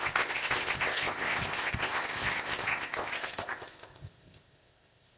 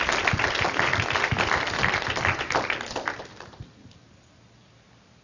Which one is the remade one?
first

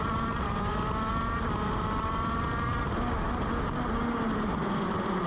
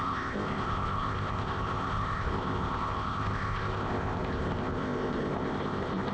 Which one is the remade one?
second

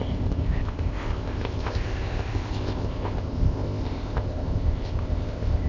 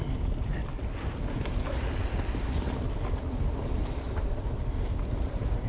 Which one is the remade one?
first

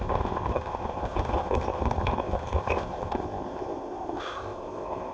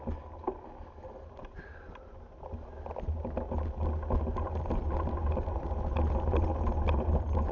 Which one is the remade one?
first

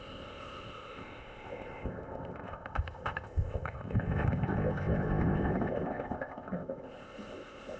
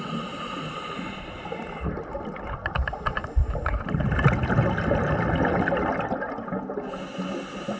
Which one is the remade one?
first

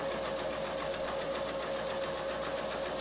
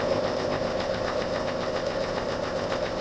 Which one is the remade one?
second